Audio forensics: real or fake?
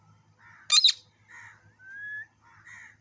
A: real